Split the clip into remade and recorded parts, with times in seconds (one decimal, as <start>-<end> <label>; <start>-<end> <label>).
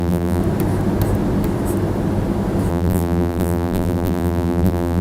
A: 0.0-0.4 remade; 0.4-2.7 recorded; 2.7-5.0 remade